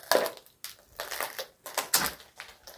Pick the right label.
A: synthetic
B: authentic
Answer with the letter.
B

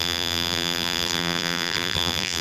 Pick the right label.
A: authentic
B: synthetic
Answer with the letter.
B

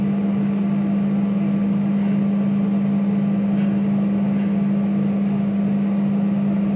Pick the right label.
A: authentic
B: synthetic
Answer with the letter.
A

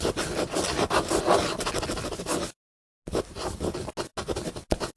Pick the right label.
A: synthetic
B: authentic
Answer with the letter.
B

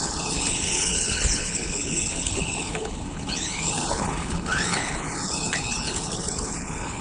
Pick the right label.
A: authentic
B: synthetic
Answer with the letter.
B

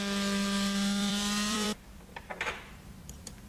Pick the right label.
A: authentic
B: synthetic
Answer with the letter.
B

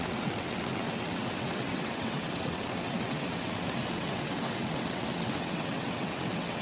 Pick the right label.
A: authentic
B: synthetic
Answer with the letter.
B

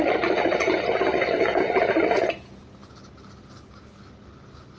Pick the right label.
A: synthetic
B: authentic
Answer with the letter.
B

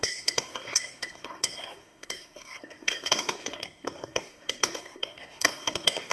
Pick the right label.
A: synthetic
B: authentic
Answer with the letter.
A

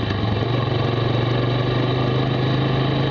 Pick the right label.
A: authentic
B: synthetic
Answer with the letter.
A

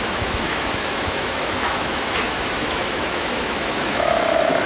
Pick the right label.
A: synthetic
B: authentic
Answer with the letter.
A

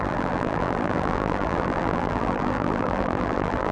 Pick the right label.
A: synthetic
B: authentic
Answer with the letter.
A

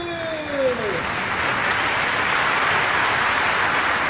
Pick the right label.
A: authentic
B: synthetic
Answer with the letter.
A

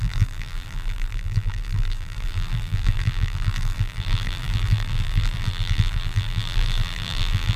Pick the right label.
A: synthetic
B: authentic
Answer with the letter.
A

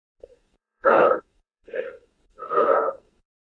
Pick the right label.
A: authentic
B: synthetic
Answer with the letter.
B